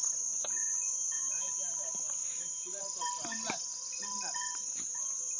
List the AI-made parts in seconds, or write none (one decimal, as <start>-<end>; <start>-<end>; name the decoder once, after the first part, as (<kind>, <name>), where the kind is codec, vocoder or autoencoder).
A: 1.3-5.4 (vocoder, BigVGAN v2)